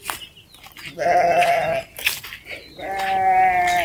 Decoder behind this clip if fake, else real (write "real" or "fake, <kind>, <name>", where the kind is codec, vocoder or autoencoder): real